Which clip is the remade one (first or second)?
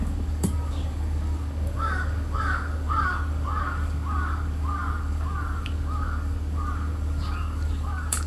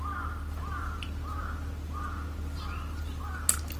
first